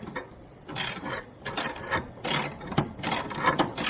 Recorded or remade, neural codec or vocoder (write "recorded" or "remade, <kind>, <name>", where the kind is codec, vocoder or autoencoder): recorded